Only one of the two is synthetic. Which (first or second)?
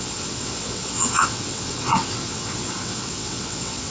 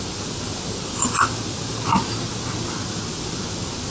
first